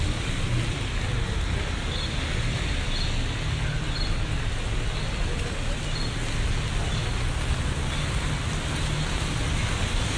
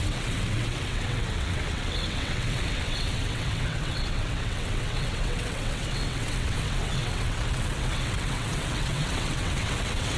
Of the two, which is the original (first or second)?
first